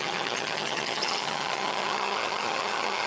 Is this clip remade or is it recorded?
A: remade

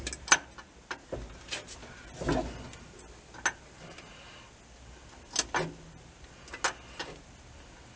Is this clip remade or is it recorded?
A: recorded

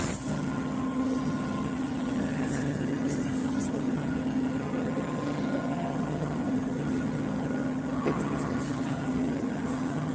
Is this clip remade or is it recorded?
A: remade